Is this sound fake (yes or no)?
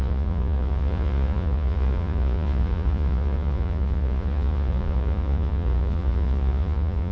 yes